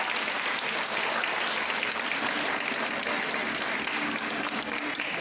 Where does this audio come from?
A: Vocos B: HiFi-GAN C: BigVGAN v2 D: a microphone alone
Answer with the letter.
D